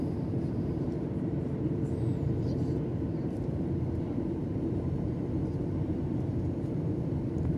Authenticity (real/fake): fake